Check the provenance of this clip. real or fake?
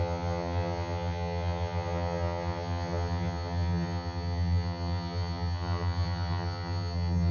fake